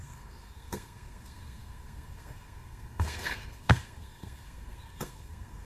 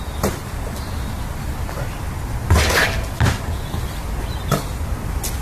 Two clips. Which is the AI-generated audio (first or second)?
first